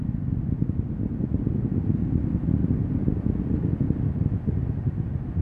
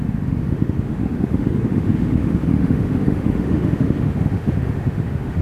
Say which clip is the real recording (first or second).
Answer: first